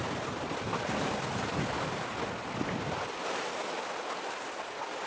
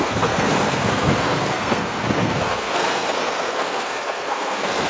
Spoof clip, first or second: second